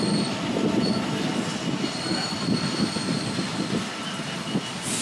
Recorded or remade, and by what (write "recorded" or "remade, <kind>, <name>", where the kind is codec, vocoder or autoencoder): recorded